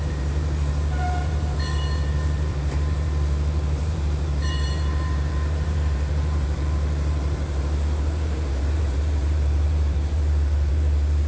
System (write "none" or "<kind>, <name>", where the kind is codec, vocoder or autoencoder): vocoder, BigVGAN v2